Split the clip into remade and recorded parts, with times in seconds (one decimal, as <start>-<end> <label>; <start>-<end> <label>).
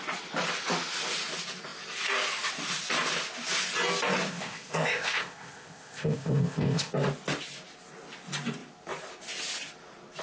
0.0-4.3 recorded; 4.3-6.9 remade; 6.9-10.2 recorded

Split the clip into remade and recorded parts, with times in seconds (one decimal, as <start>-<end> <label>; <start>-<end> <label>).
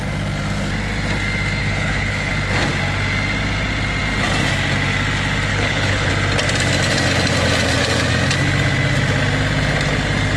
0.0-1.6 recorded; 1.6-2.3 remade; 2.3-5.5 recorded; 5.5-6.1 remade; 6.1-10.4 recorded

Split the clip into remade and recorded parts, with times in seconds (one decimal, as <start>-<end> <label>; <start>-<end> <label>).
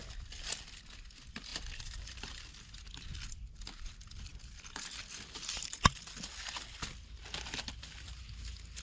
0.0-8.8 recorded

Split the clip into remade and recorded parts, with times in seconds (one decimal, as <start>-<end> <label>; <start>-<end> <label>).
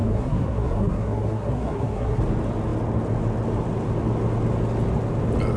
0.0-2.2 remade; 2.2-5.6 recorded